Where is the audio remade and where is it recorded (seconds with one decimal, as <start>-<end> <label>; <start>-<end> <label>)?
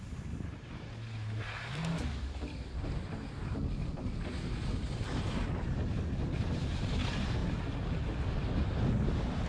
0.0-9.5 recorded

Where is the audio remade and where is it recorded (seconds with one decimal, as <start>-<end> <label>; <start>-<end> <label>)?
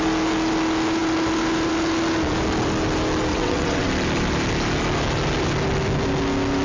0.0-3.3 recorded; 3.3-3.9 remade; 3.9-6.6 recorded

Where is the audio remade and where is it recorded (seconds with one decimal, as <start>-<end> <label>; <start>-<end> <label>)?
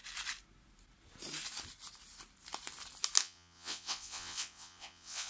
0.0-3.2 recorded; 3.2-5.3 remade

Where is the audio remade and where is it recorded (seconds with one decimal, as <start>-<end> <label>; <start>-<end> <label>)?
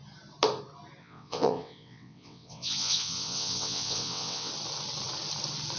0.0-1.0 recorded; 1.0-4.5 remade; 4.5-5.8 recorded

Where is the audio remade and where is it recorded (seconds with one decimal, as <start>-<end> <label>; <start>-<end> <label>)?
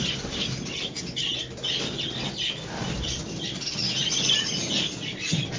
0.0-5.6 recorded